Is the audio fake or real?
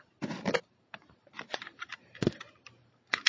fake